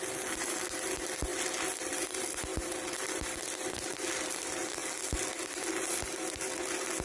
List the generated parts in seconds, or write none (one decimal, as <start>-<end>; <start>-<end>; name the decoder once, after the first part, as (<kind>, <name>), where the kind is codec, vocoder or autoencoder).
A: none